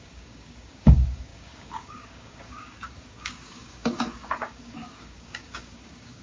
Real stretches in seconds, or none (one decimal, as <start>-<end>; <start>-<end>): none